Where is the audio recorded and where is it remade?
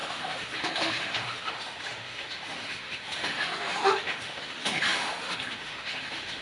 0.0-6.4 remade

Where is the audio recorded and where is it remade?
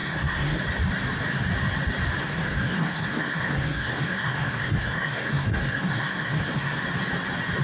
0.0-0.6 remade; 0.6-2.2 recorded; 2.2-6.8 remade; 6.8-7.6 recorded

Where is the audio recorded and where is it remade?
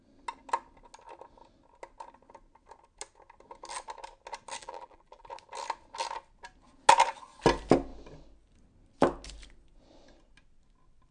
0.0-4.6 recorded; 4.6-5.3 remade; 5.3-11.1 recorded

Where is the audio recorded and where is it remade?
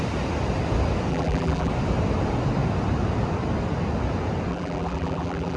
0.0-1.1 recorded; 1.1-1.7 remade; 1.7-4.5 recorded; 4.5-5.6 remade